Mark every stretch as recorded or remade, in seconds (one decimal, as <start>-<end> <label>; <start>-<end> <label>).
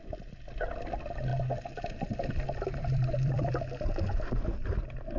0.0-1.3 recorded; 1.3-3.5 remade; 3.5-5.2 recorded